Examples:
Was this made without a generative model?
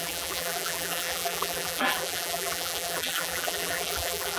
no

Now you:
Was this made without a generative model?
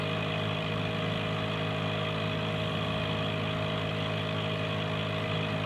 yes